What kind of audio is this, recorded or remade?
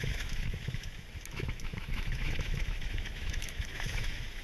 remade